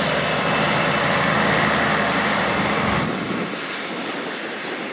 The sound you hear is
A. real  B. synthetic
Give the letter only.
A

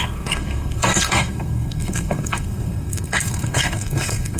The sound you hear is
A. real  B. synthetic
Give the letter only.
B